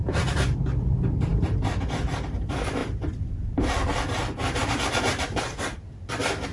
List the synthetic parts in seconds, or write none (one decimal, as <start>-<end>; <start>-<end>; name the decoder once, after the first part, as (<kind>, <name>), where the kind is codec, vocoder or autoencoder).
0.0-1.3 (vocoder, BigVGAN v2); 1.9-6.5